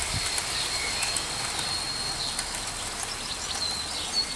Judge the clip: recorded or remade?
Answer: recorded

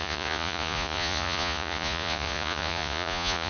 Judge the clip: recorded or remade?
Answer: remade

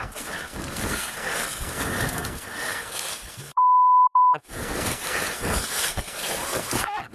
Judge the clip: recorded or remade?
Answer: remade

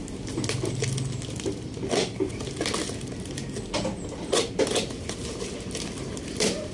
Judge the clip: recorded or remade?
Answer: recorded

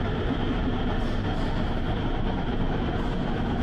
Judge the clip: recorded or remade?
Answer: recorded